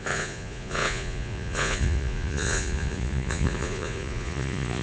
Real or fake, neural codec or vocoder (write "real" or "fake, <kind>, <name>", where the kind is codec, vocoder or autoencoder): fake, vocoder, Vocos